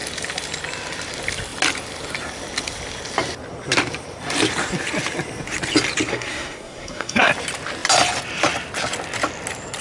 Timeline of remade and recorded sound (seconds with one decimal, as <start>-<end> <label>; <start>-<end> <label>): 0.0-6.1 recorded; 6.1-7.3 remade; 7.3-9.8 recorded